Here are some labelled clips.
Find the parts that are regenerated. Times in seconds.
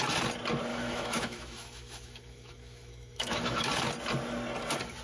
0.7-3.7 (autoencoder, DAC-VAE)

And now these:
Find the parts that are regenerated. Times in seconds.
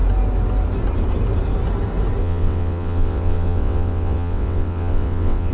2.2-5.5 (vocoder, WaveNeXt)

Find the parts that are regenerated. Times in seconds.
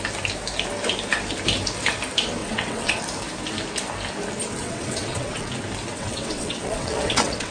2.4-3.0 (vocoder, WaveNeXt); 4.6-5.5; 5.9-7.5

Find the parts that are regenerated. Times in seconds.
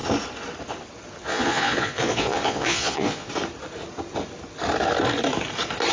1.2-3.3 (vocoder, Vocos)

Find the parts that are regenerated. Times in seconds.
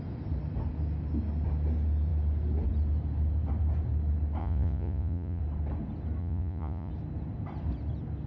4.4-5.4 (vocoder, Vocos); 6.2-6.9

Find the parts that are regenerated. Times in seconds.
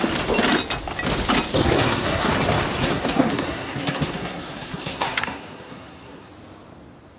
1.6-2.3 (codec, SNAC); 2.8-6.3